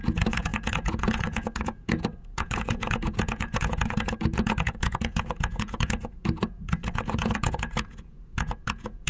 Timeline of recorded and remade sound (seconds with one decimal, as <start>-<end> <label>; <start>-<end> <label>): 0.0-9.1 remade